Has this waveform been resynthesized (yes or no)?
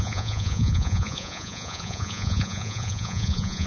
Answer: yes